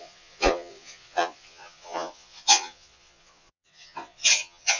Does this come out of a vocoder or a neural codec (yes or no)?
yes